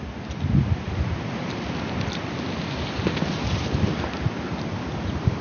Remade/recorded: recorded